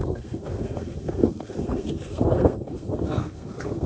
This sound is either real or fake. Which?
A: fake